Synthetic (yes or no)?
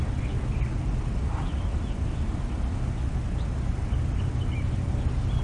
no